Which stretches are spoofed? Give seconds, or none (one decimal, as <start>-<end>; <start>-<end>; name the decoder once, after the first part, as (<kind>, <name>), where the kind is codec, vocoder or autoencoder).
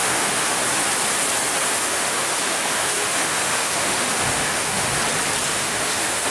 0.0-0.6 (autoencoder, DAC-VAE); 1.7-5.0; 5.5-6.3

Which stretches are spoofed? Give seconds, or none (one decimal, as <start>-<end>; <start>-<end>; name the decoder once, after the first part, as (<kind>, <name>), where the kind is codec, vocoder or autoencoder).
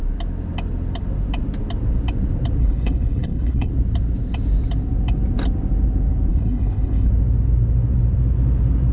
2.6-3.7 (codec, HILCodec); 6.3-7.1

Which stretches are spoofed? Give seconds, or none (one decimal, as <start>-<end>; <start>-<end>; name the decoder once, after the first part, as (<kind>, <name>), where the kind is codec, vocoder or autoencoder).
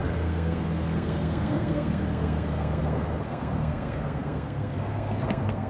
0.0-5.7 (codec, SNAC)